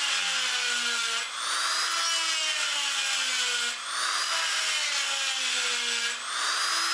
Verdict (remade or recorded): recorded